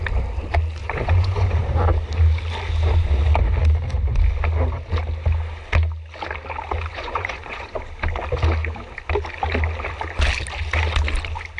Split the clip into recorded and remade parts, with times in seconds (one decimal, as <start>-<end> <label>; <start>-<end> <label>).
0.0-0.8 recorded; 0.8-1.6 remade; 1.6-6.9 recorded; 6.9-7.8 remade; 7.8-11.6 recorded